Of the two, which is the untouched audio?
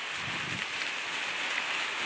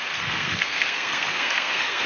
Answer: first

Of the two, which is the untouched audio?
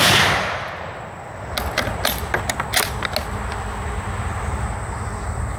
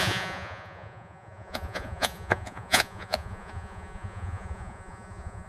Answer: first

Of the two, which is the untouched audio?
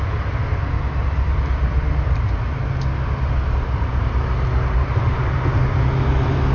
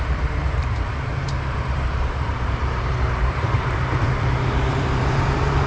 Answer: first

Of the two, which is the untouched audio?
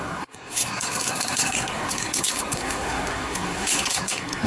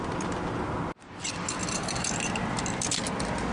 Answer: second